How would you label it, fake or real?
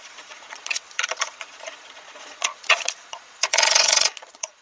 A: fake